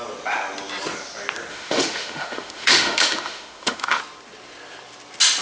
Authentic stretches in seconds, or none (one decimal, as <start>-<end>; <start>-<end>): 0.0-1.5; 4.0-5.4

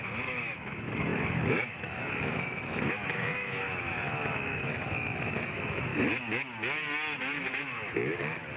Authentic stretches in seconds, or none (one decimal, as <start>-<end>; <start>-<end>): 5.9-7.6

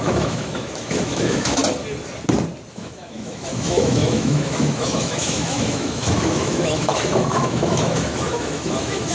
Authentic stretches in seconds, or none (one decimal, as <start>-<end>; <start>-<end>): 1.6-2.7

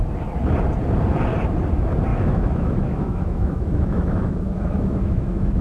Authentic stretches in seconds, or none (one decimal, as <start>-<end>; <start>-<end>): 0.0-2.1

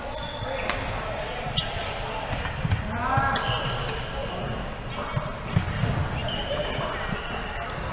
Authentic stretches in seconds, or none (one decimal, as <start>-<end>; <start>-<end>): 0.0-7.9

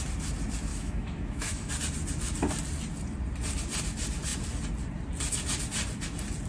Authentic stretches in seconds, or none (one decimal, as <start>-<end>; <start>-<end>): 0.0-0.7; 1.7-6.5

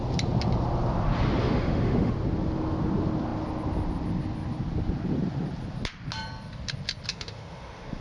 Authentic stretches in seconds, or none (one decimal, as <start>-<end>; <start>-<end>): 0.0-1.4; 2.1-7.1